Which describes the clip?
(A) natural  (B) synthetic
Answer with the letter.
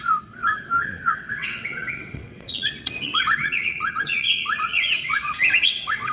B